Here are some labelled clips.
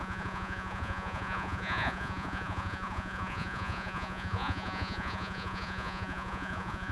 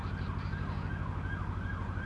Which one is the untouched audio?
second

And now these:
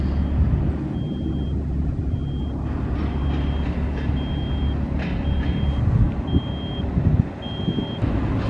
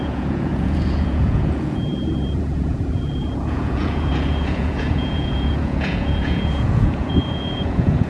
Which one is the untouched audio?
first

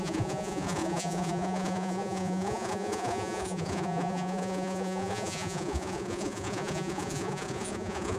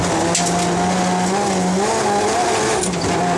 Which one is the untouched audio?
second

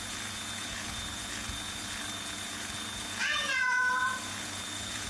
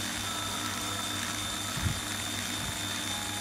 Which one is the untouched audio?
second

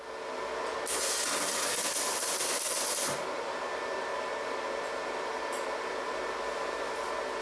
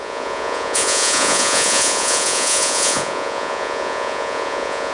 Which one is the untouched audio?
first